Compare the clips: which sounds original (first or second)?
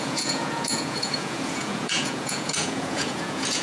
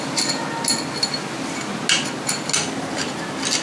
second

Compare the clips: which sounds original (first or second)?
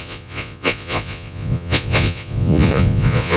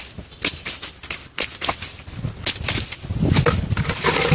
second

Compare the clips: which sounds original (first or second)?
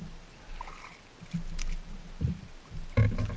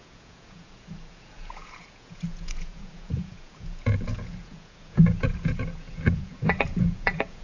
first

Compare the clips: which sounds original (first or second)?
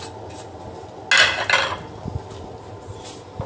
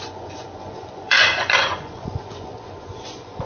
first